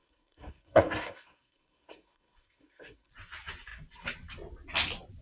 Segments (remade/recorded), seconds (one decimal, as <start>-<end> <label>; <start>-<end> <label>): 0.0-3.1 remade; 3.1-5.2 recorded

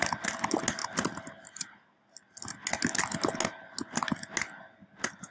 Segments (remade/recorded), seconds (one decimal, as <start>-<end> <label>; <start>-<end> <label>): 0.0-5.3 recorded

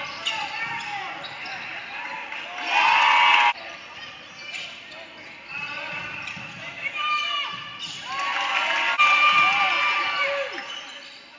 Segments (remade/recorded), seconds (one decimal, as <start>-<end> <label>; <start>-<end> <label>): 0.0-11.4 recorded

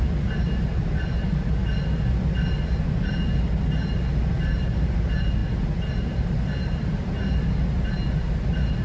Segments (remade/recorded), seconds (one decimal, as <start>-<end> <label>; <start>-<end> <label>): 0.0-8.8 recorded

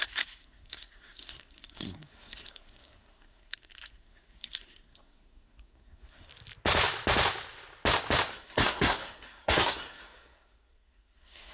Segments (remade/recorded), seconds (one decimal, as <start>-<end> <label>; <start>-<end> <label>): 0.0-6.3 remade; 6.3-8.3 recorded; 8.3-11.5 remade

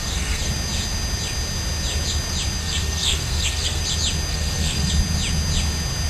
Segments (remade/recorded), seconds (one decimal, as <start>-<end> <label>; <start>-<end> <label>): 0.0-0.5 remade; 0.5-2.6 recorded; 2.6-3.8 remade; 3.8-4.3 recorded; 4.3-4.9 remade; 4.9-6.1 recorded